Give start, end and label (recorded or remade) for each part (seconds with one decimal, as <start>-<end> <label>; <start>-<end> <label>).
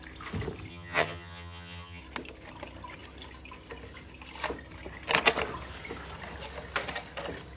0.0-0.7 recorded; 0.7-2.0 remade; 2.0-7.6 recorded